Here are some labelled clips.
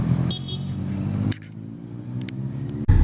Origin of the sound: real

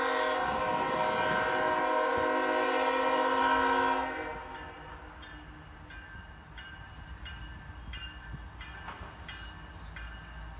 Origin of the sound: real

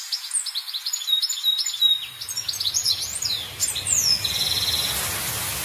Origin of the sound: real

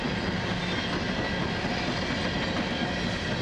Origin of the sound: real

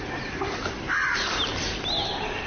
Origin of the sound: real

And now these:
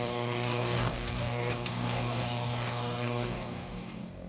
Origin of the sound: fake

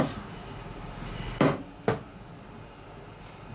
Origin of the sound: real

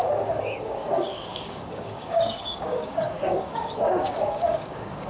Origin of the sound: fake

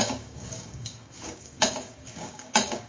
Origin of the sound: fake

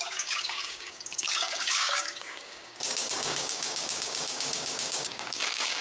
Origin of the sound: fake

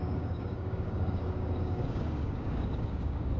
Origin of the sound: fake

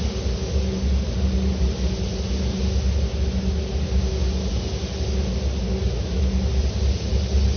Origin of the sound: real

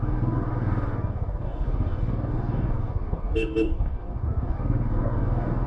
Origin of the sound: fake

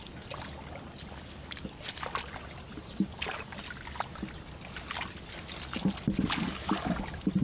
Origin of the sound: real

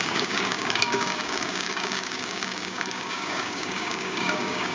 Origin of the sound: fake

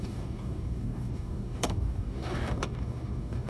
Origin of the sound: fake